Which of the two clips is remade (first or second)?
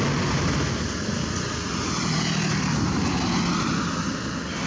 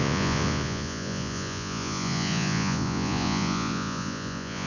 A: second